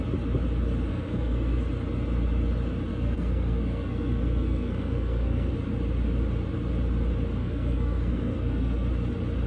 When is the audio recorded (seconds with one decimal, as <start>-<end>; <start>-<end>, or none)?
0.0-0.9; 1.6-2.9; 5.5-7.4; 8.9-9.5